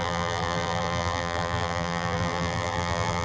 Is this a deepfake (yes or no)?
yes